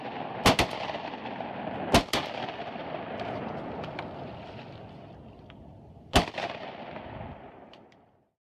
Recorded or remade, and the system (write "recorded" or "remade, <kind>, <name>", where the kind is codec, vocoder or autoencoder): recorded